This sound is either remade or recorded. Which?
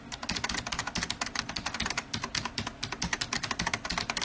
recorded